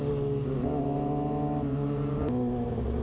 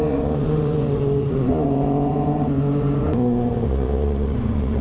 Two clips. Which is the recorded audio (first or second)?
first